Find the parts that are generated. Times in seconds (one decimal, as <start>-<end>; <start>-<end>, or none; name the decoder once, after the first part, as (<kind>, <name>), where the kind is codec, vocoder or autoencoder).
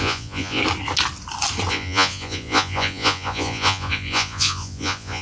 0.0-0.6 (vocoder, Vocos); 1.7-5.2